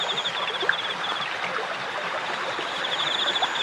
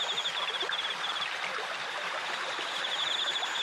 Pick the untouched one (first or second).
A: first